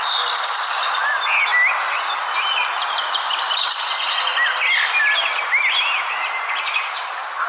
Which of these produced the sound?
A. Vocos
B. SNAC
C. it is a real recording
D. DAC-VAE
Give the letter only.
C